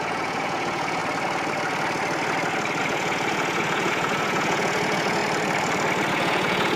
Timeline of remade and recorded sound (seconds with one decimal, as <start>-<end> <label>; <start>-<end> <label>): 0.0-1.0 remade; 1.0-2.8 recorded; 2.8-5.2 remade; 5.2-6.1 recorded; 6.1-6.8 remade